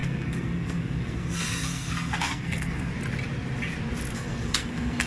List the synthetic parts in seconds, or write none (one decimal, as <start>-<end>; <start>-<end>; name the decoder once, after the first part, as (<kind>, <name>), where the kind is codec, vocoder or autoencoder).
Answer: 0.0-2.9 (codec, SNAC); 4.1-5.1